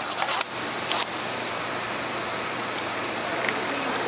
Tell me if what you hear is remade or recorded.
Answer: recorded